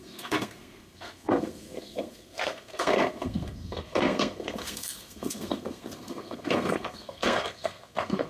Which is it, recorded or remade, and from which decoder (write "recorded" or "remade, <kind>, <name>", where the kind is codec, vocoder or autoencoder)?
remade, codec, SNAC